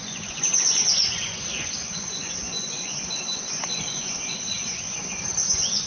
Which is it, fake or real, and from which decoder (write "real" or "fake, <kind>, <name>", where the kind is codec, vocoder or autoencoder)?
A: fake, vocoder, Vocos